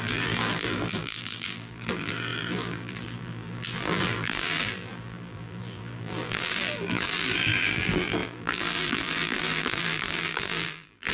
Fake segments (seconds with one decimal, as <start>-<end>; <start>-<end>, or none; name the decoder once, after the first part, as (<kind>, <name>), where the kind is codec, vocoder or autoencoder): 0.0-11.1 (vocoder, BigVGAN v2)